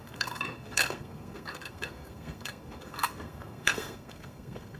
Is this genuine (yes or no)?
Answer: no